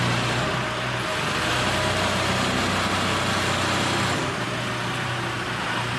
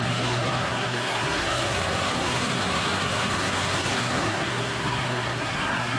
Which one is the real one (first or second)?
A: first